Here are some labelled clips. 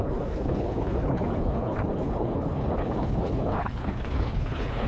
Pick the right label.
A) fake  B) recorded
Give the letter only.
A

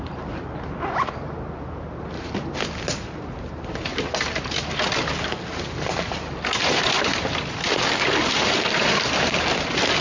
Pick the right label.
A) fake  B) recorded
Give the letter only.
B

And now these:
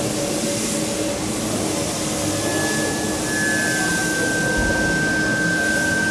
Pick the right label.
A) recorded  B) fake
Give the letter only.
A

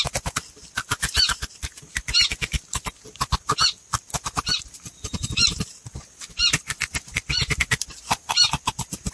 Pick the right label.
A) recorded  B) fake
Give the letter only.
A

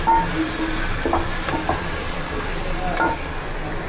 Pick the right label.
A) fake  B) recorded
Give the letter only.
B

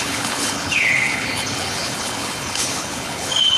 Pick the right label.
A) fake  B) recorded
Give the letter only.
A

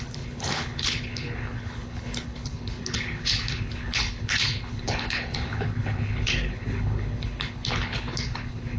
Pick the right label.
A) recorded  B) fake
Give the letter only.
B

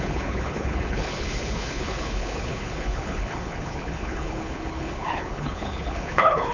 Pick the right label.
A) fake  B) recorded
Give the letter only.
A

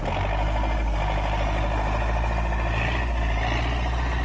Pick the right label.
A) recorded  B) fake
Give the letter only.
A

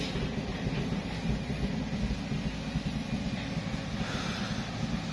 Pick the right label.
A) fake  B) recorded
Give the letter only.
B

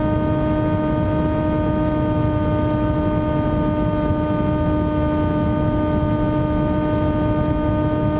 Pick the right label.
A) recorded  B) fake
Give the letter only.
A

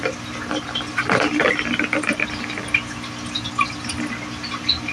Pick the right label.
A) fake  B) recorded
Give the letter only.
B